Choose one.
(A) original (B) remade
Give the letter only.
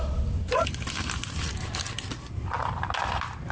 A